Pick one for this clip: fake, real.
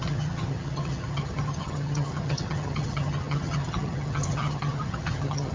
fake